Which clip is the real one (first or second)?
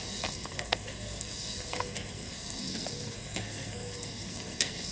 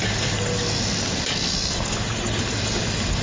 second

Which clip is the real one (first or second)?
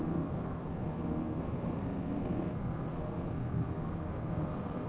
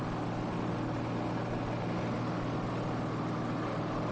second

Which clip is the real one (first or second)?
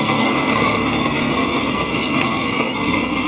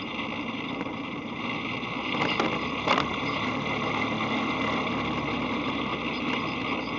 second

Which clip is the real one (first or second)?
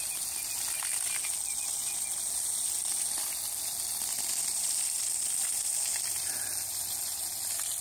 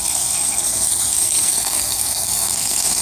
first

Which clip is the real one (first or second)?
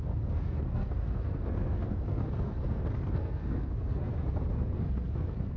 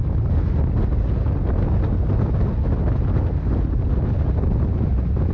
second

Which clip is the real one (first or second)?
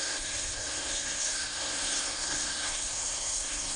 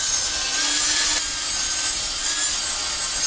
second